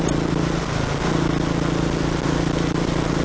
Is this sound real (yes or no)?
yes